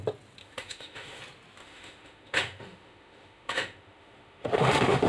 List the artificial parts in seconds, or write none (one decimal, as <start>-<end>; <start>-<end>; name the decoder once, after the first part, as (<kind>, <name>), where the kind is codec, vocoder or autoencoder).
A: 0.4-1.2 (autoencoder, DAC-VAE); 1.6-5.1